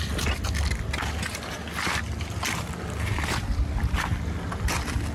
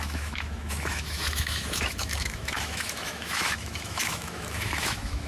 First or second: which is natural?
first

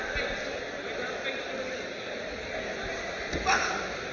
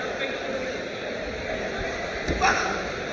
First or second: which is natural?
first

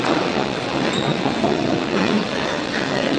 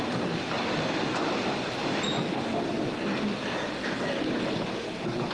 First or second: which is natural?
second